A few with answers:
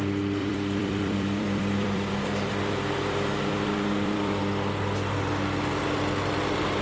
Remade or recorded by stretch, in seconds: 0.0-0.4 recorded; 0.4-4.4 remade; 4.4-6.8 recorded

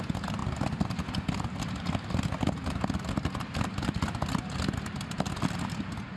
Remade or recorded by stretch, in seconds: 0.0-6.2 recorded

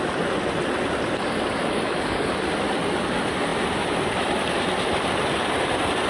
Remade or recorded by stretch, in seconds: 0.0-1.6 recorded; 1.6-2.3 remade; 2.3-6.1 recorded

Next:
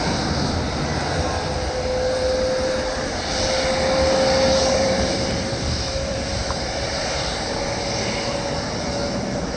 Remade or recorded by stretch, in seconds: 0.0-4.6 recorded; 4.6-7.6 remade; 7.6-9.6 recorded